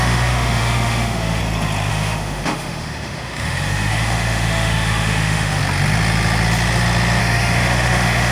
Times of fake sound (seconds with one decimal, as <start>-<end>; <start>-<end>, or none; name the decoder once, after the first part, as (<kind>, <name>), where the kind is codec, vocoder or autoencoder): 0.0-1.4 (autoencoder, DAC-VAE); 1.9-5.6; 7.2-8.3